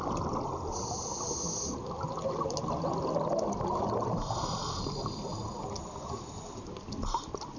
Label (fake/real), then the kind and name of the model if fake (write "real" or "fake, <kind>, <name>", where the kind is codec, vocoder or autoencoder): real